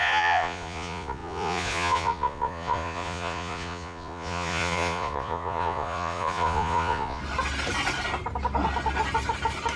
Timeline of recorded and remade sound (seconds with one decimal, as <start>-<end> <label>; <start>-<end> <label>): 0.0-7.2 remade; 7.2-9.8 recorded